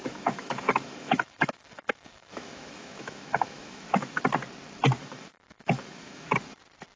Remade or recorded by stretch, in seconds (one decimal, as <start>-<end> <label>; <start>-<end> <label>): 0.0-4.2 remade; 4.2-5.0 recorded; 5.0-6.3 remade; 6.3-7.0 recorded